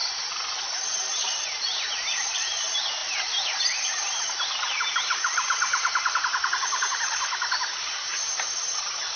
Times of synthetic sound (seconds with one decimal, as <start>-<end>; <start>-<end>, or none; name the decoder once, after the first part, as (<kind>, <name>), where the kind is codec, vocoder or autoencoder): 0.6-9.2 (vocoder, BigVGAN v2)